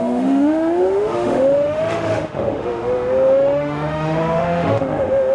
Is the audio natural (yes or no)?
no